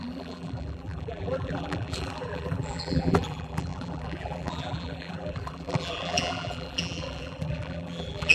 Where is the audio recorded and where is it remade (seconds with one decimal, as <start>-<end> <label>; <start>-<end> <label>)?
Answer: 0.0-8.3 remade